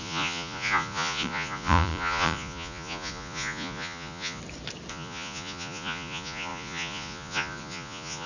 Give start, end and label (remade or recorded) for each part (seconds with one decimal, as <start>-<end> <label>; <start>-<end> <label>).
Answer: 0.0-4.4 remade; 4.4-4.9 recorded; 4.9-8.3 remade